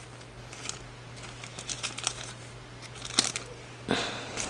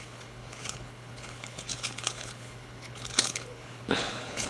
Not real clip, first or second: second